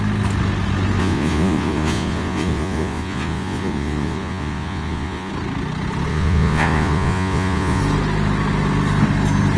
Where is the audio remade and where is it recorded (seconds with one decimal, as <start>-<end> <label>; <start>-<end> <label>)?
0.0-1.0 recorded; 1.0-5.3 remade; 5.3-6.1 recorded; 6.1-7.8 remade; 7.8-9.6 recorded